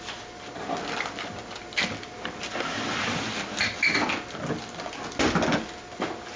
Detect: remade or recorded recorded